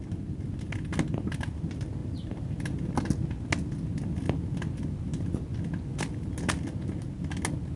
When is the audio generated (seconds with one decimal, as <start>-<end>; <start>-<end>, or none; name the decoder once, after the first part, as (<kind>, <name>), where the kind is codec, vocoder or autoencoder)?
none